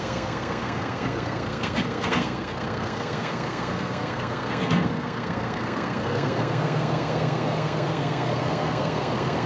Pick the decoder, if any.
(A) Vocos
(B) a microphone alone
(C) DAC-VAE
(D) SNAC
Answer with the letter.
D